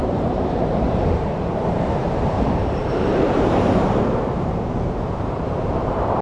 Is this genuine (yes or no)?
no